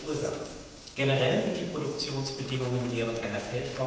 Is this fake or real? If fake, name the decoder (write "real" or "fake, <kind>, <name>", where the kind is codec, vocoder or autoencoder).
fake, codec, DAC